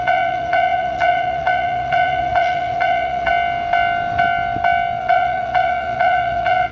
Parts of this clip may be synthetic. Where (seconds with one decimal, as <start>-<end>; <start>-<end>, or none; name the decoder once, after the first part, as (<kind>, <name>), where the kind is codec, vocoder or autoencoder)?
0.0-3.3 (vocoder, Vocos); 5.0-6.7